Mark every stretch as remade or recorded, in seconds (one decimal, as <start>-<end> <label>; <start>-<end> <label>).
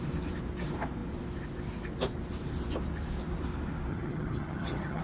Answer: 0.0-3.9 recorded; 3.9-5.0 remade